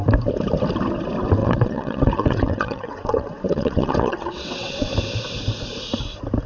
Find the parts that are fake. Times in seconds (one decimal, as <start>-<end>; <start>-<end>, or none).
1.4-4.9